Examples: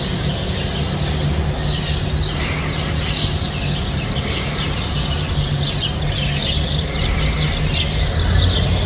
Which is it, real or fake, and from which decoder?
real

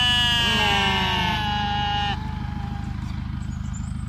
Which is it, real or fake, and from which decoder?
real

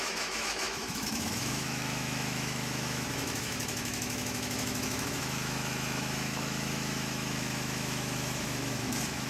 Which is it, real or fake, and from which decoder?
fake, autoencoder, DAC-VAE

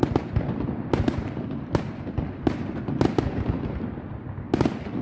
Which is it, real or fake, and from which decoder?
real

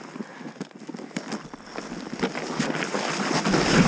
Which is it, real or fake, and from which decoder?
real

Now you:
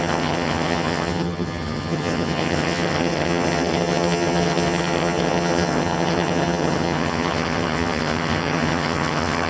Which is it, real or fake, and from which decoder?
fake, vocoder, HiFi-GAN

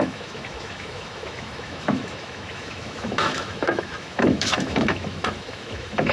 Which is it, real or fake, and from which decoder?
fake, autoencoder, DAC-VAE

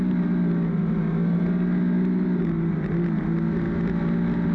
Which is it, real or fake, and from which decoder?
real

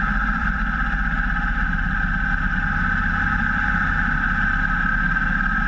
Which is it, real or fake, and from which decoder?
fake, vocoder, BigVGAN v2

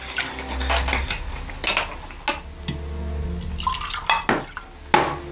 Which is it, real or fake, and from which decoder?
real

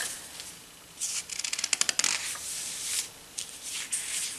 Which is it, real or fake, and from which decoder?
real